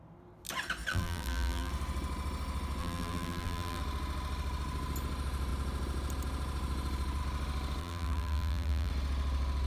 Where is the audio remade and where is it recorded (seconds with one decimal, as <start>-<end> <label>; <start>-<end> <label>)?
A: 0.0-0.9 recorded; 0.9-1.7 remade; 1.7-2.8 recorded; 2.8-3.8 remade; 3.8-7.8 recorded; 7.8-8.9 remade; 8.9-9.7 recorded